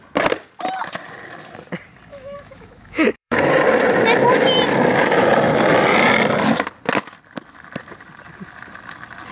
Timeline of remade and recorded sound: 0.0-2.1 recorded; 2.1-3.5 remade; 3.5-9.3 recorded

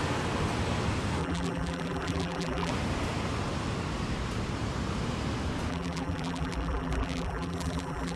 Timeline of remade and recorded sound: 0.0-1.2 recorded; 1.2-2.7 remade; 2.7-5.7 recorded; 5.7-8.2 remade

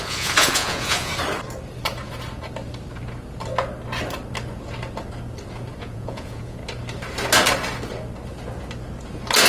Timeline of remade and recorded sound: 0.0-1.1 remade; 1.1-5.8 recorded; 5.8-6.6 remade; 6.6-9.5 recorded

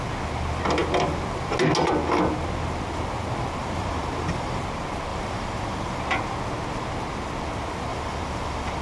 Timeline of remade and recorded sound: 0.0-3.6 recorded; 3.6-4.6 remade; 4.6-5.1 recorded; 5.1-6.0 remade; 6.0-7.9 recorded; 7.9-8.8 remade

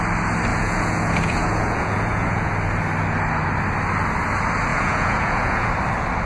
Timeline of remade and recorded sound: 0.0-0.5 recorded; 0.5-2.5 remade; 2.5-4.7 recorded; 4.7-5.7 remade; 5.7-6.3 recorded

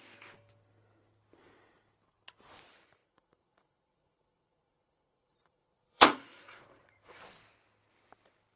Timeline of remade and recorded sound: 0.0-3.0 recorded; 3.0-7.2 remade; 7.2-8.6 recorded